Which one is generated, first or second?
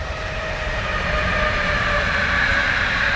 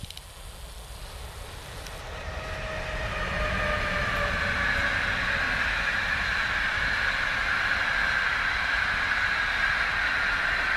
first